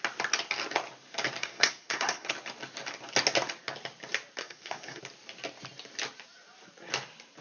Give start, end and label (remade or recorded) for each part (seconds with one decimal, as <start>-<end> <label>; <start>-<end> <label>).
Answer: 0.0-1.4 recorded; 1.4-2.3 remade; 2.3-4.4 recorded; 4.4-5.0 remade; 5.0-7.4 recorded